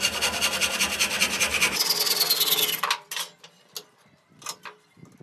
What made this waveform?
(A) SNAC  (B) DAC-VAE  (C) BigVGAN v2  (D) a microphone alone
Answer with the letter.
D